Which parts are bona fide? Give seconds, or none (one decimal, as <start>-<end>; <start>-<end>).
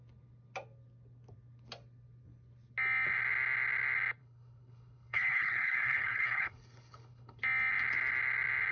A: 0.0-4.2; 7.4-8.7